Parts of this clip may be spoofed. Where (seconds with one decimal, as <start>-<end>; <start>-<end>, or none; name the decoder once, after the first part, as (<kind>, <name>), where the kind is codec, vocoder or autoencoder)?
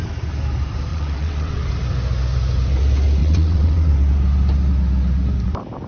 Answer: 0.9-1.6 (vocoder, WaveNeXt); 3.2-3.9